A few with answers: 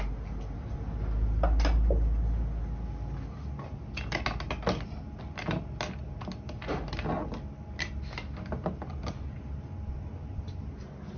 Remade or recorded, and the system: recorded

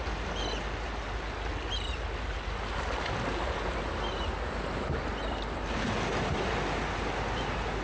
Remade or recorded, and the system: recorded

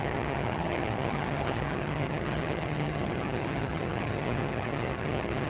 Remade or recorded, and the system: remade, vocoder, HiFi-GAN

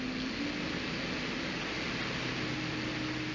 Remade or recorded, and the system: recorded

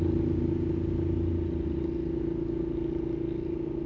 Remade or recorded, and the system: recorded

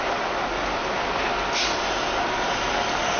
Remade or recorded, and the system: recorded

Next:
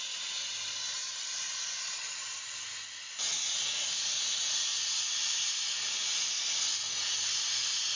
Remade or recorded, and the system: recorded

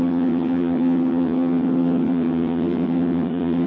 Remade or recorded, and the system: remade, vocoder, HiFi-GAN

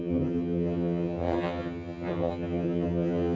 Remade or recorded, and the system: remade, vocoder, HiFi-GAN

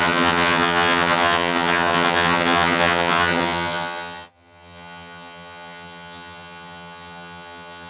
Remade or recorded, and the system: remade, vocoder, HiFi-GAN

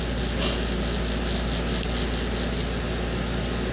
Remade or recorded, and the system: recorded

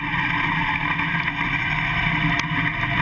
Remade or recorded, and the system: recorded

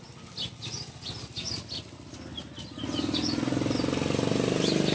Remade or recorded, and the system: recorded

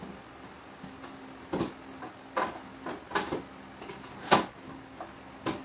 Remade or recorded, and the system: recorded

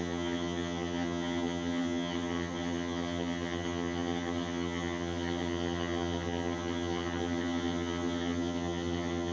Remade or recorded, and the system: remade, vocoder, HiFi-GAN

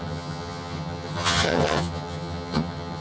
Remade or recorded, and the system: remade, vocoder, HiFi-GAN